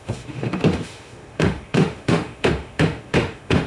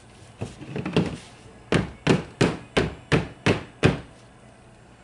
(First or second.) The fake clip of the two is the first